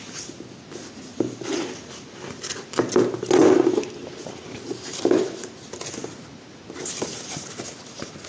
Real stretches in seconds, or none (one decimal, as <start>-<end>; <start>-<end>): 0.0-8.3